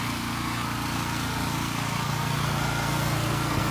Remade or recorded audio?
remade